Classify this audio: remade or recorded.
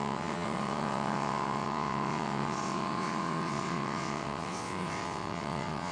remade